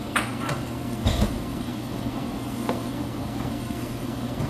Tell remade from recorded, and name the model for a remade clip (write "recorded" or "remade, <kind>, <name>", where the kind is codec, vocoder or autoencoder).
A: remade, codec, SNAC